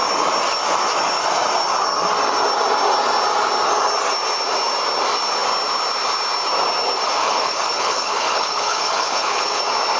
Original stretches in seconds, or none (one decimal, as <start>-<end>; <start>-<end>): 0.0-7.2; 9.6-10.0